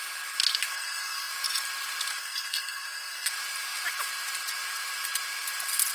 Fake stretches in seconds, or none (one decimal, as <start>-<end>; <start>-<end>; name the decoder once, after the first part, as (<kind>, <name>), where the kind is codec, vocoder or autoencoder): 0.7-1.3 (codec, SNAC); 2.2-3.3